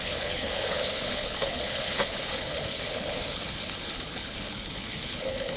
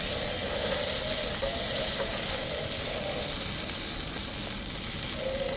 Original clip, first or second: second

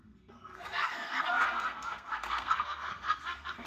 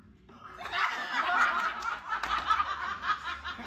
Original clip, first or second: second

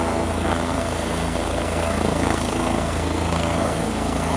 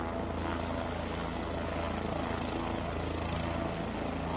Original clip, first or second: second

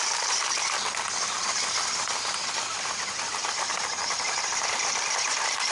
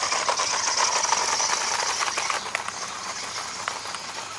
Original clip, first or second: second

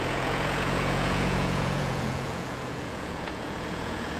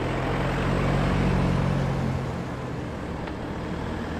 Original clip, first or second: second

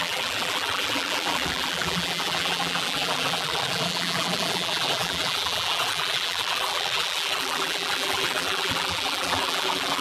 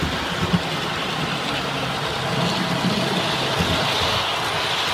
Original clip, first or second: second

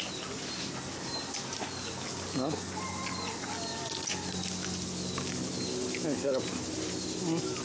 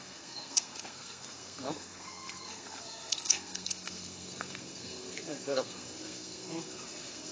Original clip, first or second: first